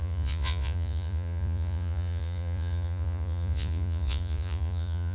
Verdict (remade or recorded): remade